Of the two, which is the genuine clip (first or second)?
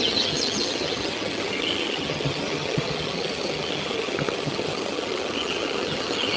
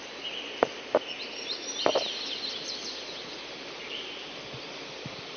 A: second